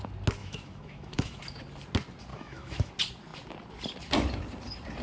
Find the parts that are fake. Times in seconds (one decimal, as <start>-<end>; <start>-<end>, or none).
0.4-1.4; 2.3-2.9